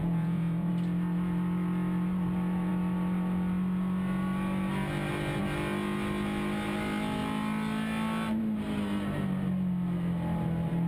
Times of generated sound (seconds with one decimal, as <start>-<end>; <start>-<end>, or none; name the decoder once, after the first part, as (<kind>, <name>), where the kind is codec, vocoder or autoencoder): 0.0-0.7 (vocoder, Vocos)